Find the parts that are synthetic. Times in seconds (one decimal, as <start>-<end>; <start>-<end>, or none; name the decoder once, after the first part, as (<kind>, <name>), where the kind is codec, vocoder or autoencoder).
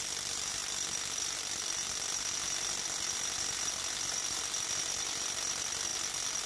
none